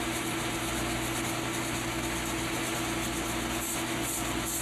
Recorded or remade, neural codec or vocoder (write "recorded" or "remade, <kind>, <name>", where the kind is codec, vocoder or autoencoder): recorded